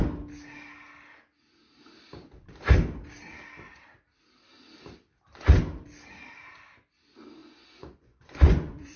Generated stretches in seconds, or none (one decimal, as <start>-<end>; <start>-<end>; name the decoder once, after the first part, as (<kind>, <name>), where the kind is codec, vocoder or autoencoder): 7.4-9.0 (vocoder, Vocos)